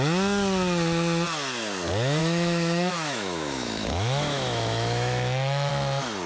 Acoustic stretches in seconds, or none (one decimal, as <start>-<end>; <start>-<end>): 0.0-2.2; 5.7-6.3